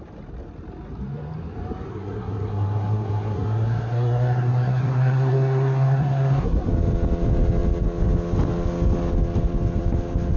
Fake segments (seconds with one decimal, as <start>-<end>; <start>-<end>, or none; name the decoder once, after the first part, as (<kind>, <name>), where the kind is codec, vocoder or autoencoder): 1.9-6.7 (codec, SNAC)